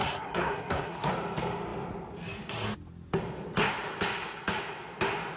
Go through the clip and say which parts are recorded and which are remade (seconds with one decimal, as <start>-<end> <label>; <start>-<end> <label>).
0.0-1.1 remade; 1.1-5.4 recorded